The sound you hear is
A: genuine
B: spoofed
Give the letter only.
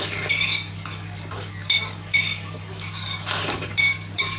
B